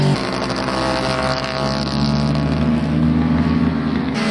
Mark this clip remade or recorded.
recorded